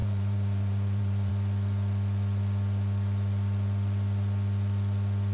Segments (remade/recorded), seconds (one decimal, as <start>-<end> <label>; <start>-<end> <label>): 0.0-1.3 remade; 1.3-5.3 recorded